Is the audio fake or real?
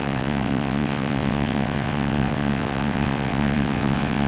fake